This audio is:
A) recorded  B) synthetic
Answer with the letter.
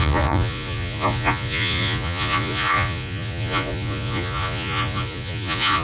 B